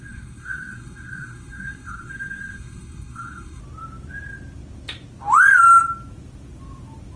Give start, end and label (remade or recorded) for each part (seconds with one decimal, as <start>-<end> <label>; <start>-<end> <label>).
0.0-3.6 remade; 3.6-7.2 recorded